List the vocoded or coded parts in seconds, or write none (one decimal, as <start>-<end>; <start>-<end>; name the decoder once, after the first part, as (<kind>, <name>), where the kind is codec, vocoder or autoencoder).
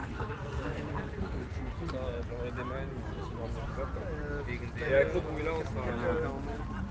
0.0-1.7 (codec, SNAC)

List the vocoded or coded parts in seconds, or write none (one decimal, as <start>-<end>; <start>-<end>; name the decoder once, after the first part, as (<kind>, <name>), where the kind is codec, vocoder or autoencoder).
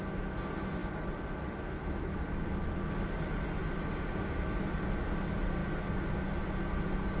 none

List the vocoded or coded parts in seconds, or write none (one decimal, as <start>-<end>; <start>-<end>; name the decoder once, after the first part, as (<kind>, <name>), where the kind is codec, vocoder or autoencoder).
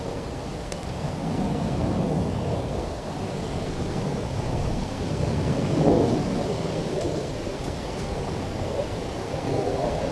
0.0-10.1 (codec, SNAC)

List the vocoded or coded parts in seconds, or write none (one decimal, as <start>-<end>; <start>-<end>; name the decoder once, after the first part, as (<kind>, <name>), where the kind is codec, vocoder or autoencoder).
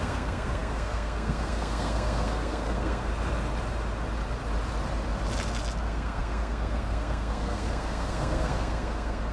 0.0-3.1 (codec, SNAC); 5.8-9.3